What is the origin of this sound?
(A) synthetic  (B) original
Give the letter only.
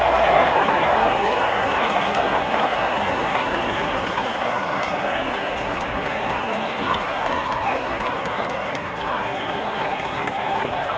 A